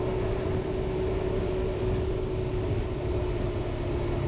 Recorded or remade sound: recorded